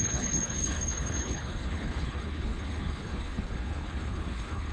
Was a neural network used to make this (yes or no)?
yes